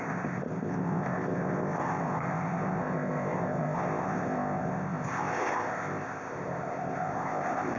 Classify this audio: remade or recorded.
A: remade